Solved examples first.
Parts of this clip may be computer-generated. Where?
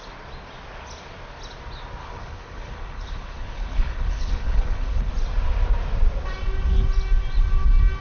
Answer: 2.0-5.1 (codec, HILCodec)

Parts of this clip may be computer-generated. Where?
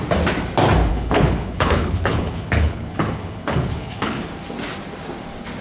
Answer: 0.9-4.3 (codec, HILCodec)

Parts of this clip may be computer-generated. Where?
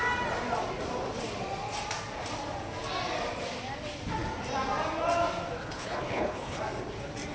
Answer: 5.6-6.6 (codec, HILCodec)